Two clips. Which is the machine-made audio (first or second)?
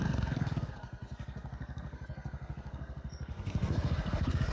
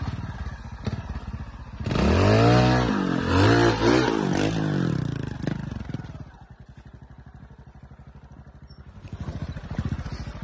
first